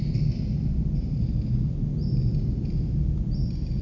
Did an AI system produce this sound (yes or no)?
no